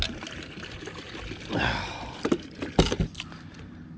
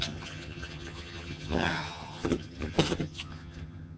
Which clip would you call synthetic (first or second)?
second